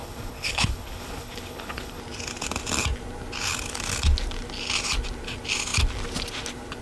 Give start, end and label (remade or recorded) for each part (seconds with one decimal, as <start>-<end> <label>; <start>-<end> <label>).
0.0-2.0 remade; 2.0-6.8 recorded